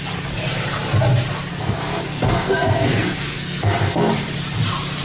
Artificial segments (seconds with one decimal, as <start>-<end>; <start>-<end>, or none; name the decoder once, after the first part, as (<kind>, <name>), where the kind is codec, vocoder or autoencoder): 1.5-4.1 (codec, SNAC)